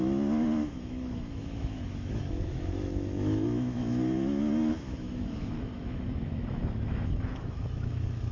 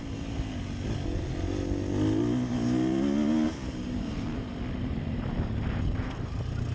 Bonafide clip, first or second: second